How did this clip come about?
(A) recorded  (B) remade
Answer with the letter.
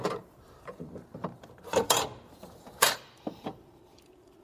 B